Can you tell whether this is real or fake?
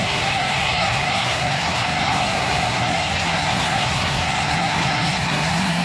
fake